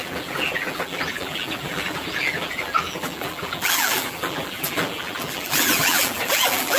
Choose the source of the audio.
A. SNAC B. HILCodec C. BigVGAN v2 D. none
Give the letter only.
C